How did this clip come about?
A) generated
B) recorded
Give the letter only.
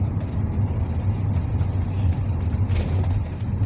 B